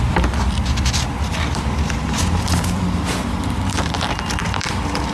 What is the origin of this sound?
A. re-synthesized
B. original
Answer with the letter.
A